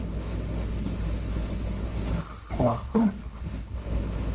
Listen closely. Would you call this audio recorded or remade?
remade